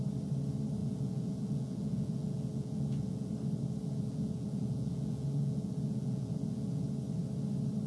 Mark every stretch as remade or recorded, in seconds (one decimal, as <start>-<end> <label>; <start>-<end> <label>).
0.0-0.8 recorded; 0.8-3.3 remade; 3.3-3.8 recorded; 3.8-6.9 remade; 6.9-7.9 recorded